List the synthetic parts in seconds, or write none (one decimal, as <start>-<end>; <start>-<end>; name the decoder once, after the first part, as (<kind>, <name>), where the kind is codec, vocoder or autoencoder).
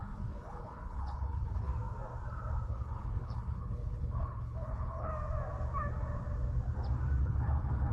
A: 0.0-1.7 (codec, HILCodec); 2.7-5.1; 7.2-7.9